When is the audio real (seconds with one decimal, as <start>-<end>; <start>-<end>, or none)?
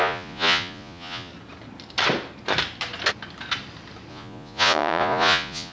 1.3-4.1